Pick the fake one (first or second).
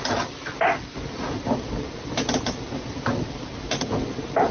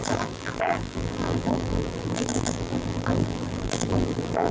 second